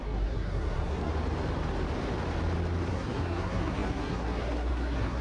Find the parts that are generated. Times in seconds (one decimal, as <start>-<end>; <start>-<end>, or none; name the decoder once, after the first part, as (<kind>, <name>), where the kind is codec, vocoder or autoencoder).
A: 0.0-1.1 (codec, SNAC); 2.9-5.2